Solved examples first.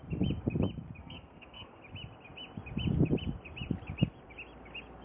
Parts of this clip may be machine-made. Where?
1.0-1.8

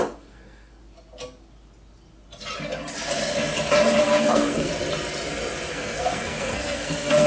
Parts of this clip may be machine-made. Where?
0.0-0.8; 4.0-4.7; 5.7-7.3

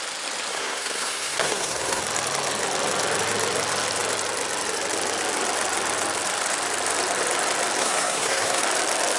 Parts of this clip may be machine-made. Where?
0.5-2.0; 7.8-8.6

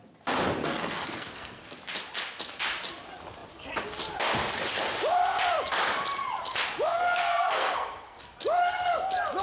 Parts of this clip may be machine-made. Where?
0.6-1.8; 6.9-8.2

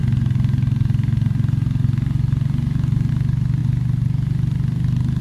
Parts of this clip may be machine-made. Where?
none

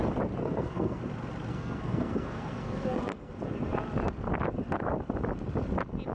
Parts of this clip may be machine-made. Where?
0.4-1.0; 1.5-3.3

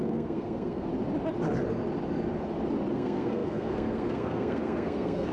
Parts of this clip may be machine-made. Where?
0.0-0.9; 2.9-5.3

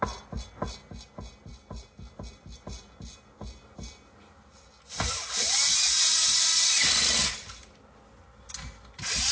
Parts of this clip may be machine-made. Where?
none